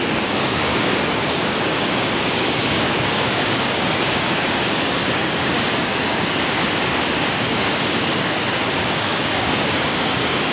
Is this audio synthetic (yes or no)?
yes